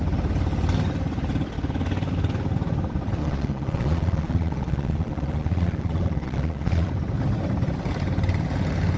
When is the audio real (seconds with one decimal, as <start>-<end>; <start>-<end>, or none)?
0.0-3.2; 6.9-9.0